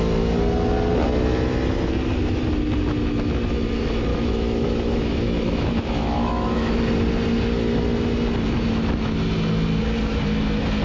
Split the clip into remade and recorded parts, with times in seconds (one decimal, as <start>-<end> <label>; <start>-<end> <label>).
0.0-4.1 recorded; 4.1-6.8 remade; 6.8-10.8 recorded